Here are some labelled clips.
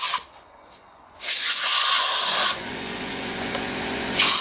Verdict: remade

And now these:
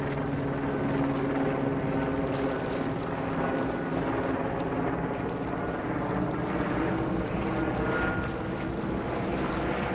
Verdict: recorded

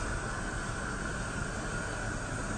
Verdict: recorded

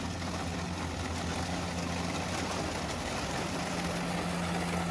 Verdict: recorded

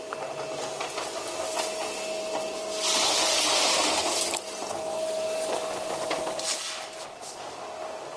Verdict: recorded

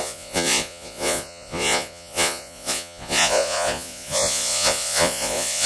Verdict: remade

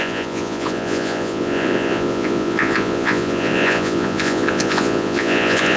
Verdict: remade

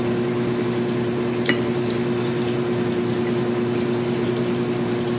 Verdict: recorded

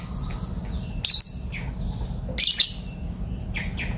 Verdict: recorded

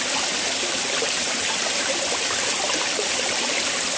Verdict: recorded